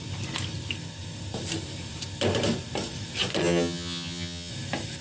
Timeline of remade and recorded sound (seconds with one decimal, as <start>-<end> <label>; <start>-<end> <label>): 0.0-3.4 recorded; 3.4-4.5 remade; 4.5-5.0 recorded